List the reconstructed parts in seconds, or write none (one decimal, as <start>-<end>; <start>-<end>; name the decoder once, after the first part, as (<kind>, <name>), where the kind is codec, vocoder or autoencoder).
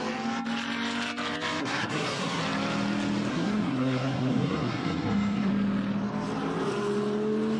1.6-2.4 (codec, SNAC); 3.3-5.5